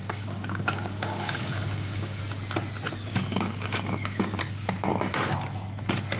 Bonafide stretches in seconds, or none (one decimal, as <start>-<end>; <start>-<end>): 2.2-3.1; 4.4-6.2